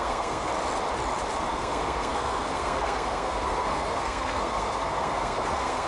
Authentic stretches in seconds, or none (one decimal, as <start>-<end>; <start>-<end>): 0.5-1.4